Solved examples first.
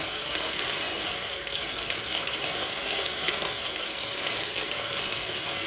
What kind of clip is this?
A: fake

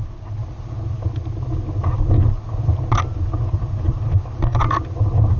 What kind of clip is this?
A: real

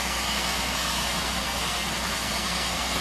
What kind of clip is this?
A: fake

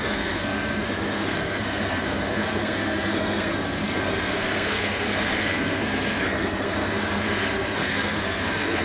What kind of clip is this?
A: fake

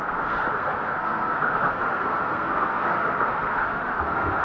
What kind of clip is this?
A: fake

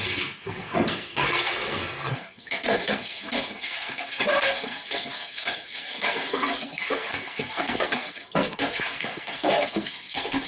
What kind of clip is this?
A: fake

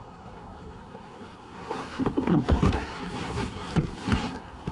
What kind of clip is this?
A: fake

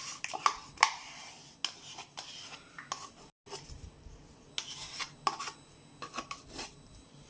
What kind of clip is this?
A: real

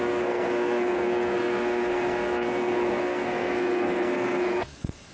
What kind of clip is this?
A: fake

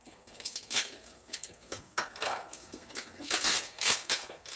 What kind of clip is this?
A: fake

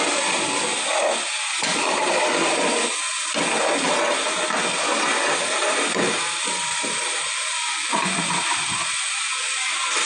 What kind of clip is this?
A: real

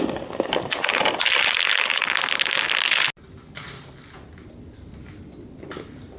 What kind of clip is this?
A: real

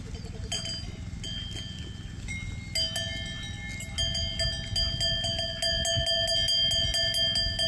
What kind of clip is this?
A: real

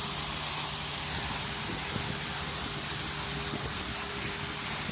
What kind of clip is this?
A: real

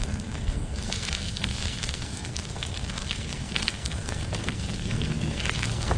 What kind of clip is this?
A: fake